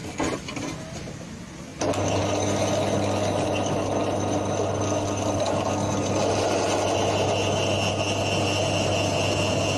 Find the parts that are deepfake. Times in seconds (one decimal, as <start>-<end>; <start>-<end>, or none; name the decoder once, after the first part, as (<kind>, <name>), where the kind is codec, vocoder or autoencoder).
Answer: none